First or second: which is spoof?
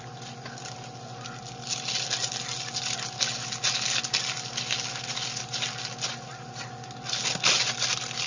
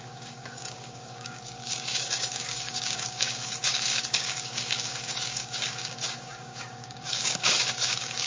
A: second